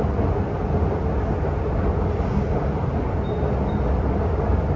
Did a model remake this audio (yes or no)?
no